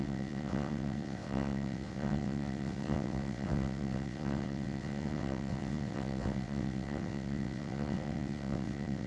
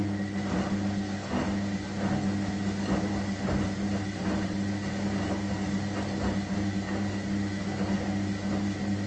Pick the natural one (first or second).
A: second